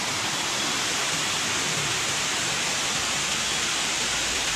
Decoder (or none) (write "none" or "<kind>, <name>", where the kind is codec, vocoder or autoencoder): none